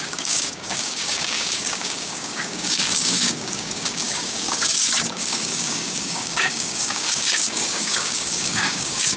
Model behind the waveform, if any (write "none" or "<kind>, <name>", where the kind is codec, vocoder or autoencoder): codec, DAC